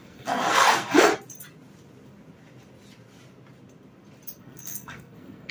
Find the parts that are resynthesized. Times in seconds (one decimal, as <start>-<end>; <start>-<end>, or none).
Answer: 0.0-1.1; 4.4-5.5